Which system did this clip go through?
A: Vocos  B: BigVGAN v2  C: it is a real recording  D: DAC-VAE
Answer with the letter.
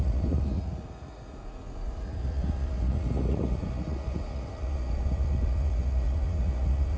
A